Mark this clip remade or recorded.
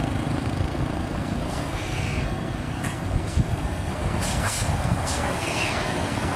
remade